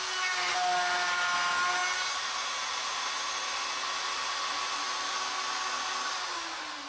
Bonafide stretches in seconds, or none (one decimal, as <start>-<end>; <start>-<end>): 0.0-6.9